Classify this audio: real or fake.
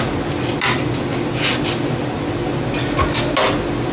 real